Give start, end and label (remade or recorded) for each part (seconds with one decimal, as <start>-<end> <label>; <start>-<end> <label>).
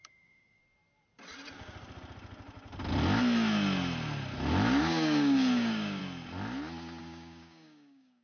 0.0-0.6 remade; 0.6-4.8 recorded; 4.8-6.0 remade; 6.0-7.0 recorded; 7.0-8.2 remade